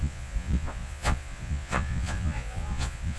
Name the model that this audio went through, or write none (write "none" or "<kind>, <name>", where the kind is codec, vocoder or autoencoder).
vocoder, Vocos